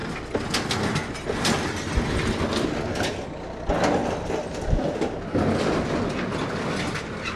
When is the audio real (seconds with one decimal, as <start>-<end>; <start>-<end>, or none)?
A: 0.0-7.4

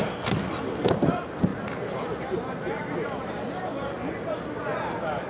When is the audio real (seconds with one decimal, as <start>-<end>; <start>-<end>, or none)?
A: 0.0-5.3